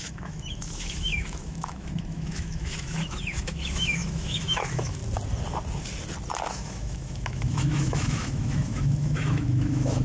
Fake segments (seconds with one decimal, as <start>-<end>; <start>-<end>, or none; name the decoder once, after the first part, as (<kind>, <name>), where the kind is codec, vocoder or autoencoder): 0.0-5.0 (autoencoder, DAC-VAE); 6.5-10.0